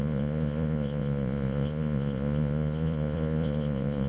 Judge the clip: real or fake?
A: fake